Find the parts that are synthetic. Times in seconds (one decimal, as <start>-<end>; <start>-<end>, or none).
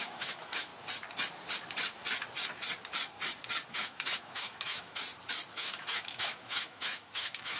0.0-0.7; 3.7-5.0; 5.5-7.6